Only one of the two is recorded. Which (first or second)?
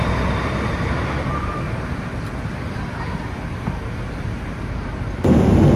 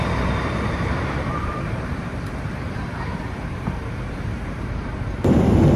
first